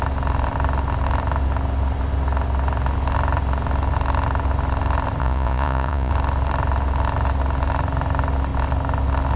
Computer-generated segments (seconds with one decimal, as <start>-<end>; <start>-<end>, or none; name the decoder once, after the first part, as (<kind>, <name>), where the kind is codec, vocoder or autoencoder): 5.2-6.1 (vocoder, Vocos)